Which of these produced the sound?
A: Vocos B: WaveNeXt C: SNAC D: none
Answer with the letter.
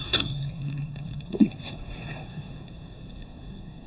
C